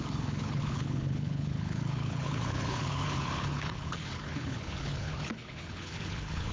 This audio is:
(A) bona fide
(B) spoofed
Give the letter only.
B